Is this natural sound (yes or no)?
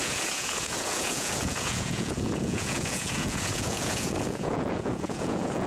no